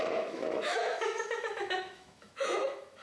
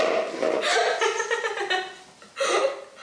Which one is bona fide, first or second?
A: second